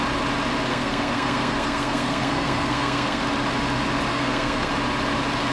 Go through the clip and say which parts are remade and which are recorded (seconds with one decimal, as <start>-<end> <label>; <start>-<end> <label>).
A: 0.0-0.7 recorded; 0.7-3.2 remade; 3.2-4.1 recorded; 4.1-4.7 remade; 4.7-5.5 recorded